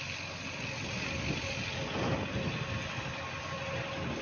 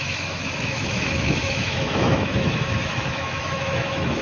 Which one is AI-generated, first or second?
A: second